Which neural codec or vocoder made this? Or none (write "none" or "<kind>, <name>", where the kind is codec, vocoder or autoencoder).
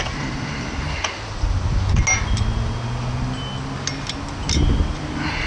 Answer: none